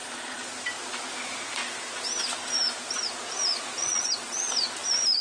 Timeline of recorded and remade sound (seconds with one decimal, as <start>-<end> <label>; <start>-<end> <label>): 0.0-0.5 remade; 0.5-3.8 recorded; 3.8-4.5 remade; 4.5-5.2 recorded